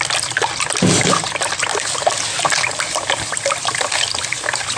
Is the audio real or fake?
real